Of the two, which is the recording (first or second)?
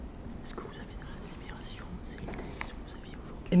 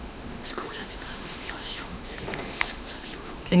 first